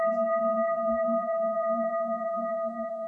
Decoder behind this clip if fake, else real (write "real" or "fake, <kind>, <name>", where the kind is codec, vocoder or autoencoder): fake, vocoder, BigVGAN v2